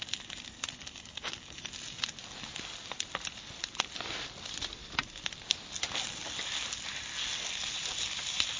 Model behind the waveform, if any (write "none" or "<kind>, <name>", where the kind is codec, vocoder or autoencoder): none